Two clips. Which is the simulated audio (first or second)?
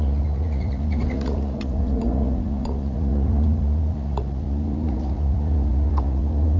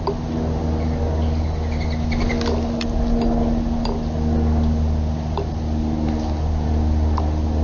first